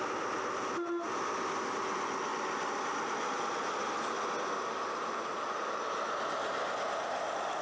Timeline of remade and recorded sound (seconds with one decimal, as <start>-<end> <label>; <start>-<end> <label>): 0.0-7.6 recorded